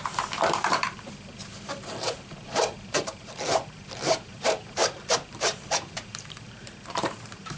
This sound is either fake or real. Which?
fake